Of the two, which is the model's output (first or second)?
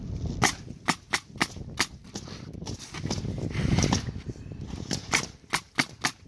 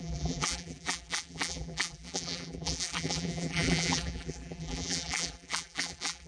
second